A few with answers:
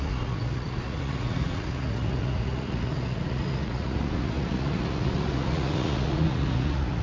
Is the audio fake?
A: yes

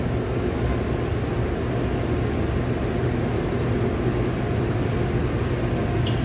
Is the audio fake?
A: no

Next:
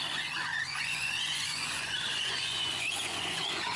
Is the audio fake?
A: yes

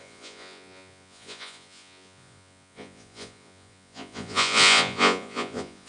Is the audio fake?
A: yes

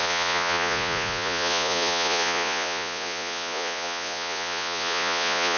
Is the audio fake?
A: yes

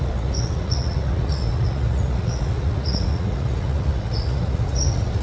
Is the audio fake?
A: yes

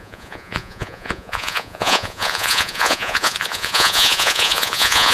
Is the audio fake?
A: yes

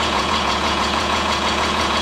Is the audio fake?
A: yes